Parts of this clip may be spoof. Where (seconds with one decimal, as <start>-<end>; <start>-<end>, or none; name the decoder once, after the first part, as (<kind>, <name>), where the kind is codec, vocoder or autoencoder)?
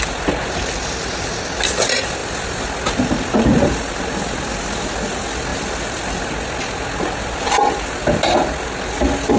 none